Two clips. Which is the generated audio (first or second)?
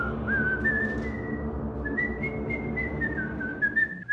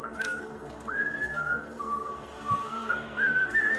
second